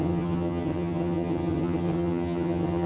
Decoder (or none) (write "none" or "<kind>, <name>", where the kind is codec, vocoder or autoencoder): vocoder, HiFi-GAN